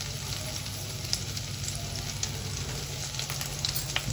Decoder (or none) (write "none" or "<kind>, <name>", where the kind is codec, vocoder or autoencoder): none